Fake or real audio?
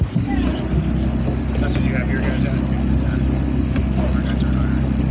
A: real